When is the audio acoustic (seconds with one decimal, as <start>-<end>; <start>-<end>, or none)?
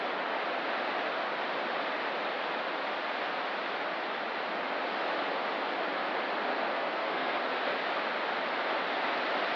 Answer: 0.0-6.7; 7.4-9.6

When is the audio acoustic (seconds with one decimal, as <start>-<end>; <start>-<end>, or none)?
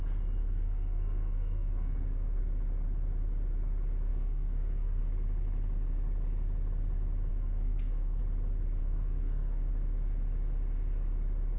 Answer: 0.0-0.4; 2.4-4.1; 5.0-7.3; 8.2-8.8; 9.7-11.6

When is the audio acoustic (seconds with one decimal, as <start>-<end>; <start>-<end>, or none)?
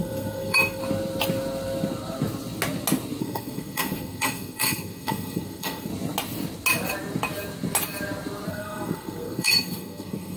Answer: 0.8-3.2; 5.9-8.5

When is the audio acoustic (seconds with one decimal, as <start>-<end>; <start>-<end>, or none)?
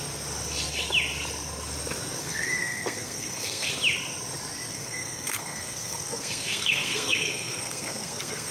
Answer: 0.0-2.2; 3.7-4.7